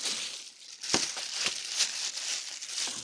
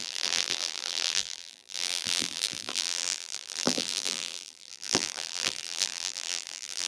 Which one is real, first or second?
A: first